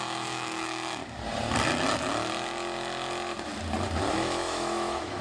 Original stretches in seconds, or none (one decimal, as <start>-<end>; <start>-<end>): 1.0-4.1